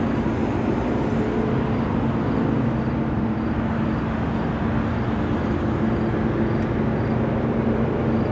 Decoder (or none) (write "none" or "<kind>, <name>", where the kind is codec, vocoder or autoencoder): none